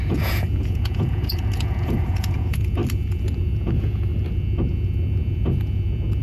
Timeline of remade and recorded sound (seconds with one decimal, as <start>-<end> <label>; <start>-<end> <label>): 0.0-2.8 remade; 2.8-3.4 recorded; 3.4-4.1 remade; 4.1-4.7 recorded; 4.7-6.2 remade